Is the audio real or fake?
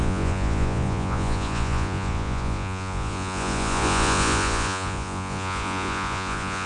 fake